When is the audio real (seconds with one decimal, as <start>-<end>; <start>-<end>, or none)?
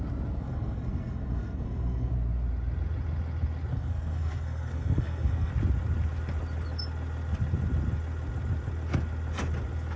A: 0.0-0.4; 2.1-3.7; 5.5-10.0